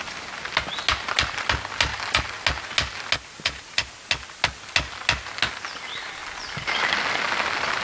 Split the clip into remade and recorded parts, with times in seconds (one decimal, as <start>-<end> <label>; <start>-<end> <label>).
0.0-7.8 recorded